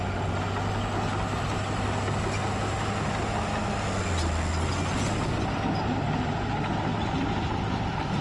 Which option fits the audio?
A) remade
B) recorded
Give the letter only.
B